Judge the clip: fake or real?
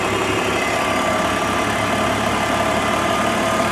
real